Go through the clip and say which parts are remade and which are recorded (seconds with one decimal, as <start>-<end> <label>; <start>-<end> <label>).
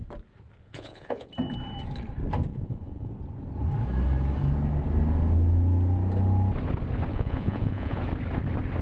0.0-0.6 recorded; 0.6-1.3 remade; 1.3-2.5 recorded; 2.5-3.1 remade; 3.1-7.1 recorded; 7.1-8.0 remade; 8.0-8.8 recorded